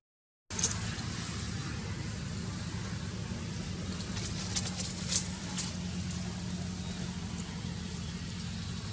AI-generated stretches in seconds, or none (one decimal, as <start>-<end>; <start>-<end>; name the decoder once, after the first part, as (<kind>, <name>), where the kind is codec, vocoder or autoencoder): none